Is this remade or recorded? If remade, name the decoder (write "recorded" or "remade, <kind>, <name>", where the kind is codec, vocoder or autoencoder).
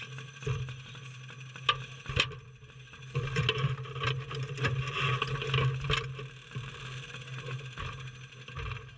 recorded